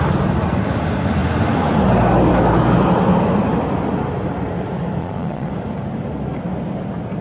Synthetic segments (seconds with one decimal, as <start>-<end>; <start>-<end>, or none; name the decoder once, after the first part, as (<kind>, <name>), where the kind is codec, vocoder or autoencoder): 5.0-5.5 (vocoder, Vocos)